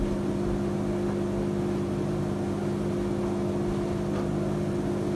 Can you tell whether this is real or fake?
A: real